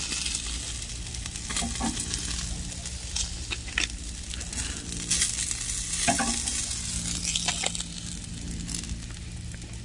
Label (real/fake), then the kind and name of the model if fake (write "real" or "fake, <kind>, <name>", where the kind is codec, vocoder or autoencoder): real